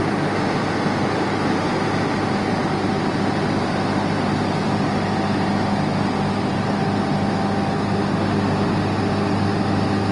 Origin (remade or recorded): recorded